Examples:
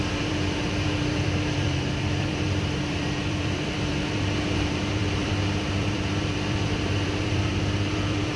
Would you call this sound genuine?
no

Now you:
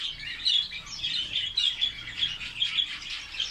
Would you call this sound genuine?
yes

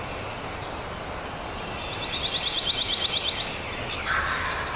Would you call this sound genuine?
yes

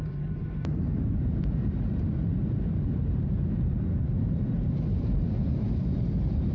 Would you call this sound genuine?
no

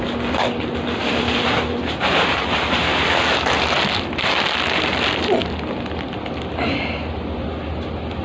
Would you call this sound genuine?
yes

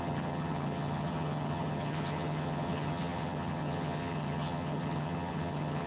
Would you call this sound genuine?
no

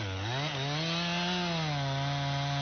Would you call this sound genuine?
yes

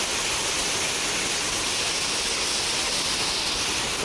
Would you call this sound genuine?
yes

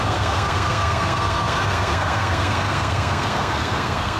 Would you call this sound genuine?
no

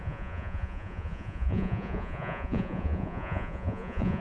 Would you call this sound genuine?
no